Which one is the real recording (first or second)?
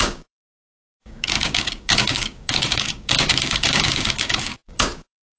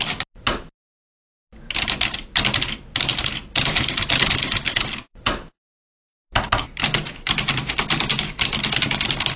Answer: second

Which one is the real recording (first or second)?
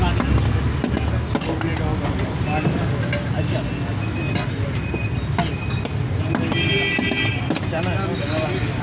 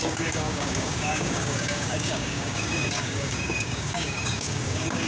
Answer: first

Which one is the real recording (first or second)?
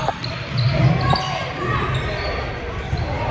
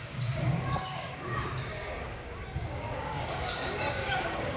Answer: first